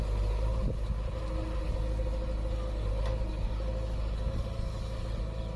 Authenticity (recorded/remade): recorded